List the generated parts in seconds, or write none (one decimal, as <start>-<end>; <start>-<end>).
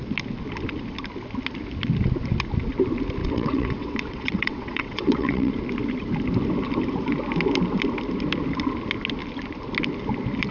3.2-5.5